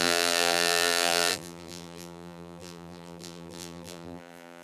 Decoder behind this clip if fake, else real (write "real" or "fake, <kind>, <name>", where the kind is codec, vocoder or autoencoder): fake, vocoder, BigVGAN v2